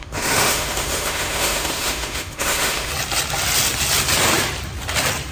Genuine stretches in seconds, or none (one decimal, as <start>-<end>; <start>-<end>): 2.9-5.3